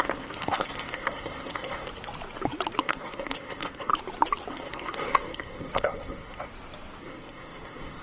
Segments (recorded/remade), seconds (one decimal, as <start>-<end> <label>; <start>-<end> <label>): 0.0-1.9 remade; 1.9-2.8 recorded; 2.8-3.9 remade; 3.9-4.5 recorded; 4.5-6.5 remade; 6.5-7.0 recorded; 7.0-8.0 remade